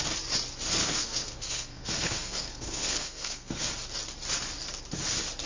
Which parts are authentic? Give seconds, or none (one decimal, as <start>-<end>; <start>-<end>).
0.0-0.8; 3.7-5.5